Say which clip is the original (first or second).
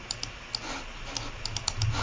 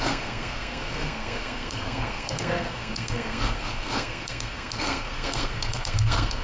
first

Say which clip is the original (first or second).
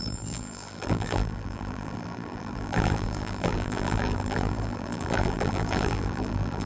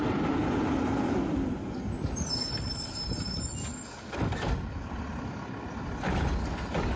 second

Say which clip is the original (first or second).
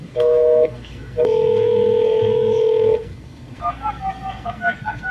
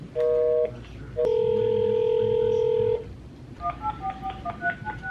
second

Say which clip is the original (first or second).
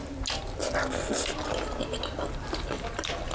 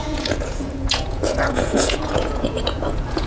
first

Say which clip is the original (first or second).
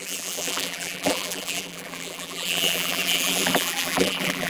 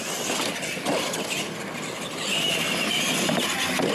second